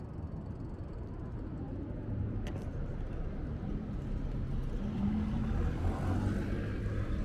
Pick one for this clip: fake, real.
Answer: real